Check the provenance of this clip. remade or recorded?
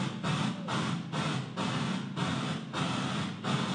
recorded